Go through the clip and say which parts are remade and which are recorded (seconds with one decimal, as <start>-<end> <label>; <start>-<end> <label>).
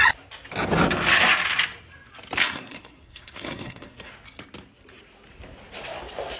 0.0-2.4 recorded; 2.4-4.1 remade; 4.1-6.4 recorded